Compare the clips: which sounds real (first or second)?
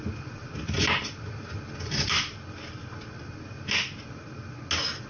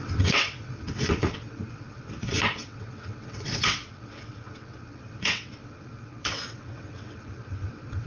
first